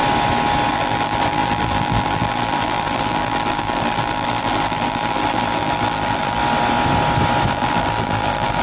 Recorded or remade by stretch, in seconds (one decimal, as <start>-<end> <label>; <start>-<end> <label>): 0.0-0.7 recorded; 0.7-6.4 remade; 6.4-7.5 recorded; 7.5-8.6 remade